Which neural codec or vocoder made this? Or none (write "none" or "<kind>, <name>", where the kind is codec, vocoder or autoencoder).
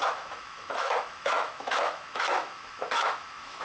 autoencoder, DAC-VAE